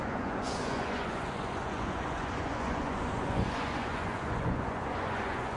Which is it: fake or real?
fake